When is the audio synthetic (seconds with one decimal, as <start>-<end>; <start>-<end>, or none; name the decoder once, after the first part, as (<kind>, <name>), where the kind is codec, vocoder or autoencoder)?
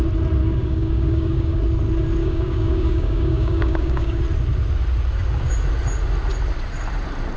0.4-1.6 (codec, DAC); 2.2-4.2